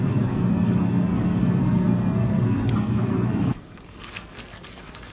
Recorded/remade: remade